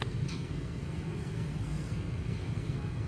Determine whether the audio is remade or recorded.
remade